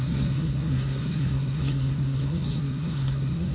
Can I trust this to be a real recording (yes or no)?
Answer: no